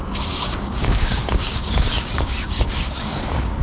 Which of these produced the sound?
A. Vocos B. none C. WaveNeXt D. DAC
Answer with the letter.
D